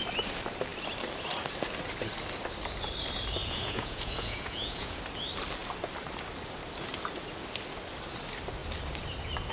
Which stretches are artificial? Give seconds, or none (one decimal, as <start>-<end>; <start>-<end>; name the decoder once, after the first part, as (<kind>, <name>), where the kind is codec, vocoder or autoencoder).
3.4-5.0 (vocoder, Vocos)